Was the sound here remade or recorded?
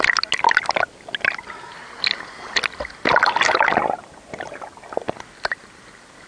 recorded